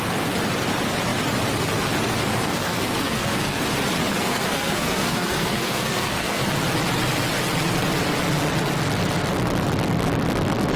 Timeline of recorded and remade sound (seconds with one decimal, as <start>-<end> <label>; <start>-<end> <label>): 0.0-2.3 recorded; 2.3-3.6 remade; 3.6-4.1 recorded; 4.1-6.4 remade; 6.4-10.8 recorded